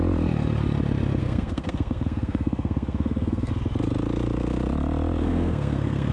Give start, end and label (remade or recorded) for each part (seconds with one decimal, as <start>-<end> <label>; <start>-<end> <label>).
0.0-1.2 recorded; 1.2-3.5 remade; 3.5-5.2 recorded; 5.2-6.1 remade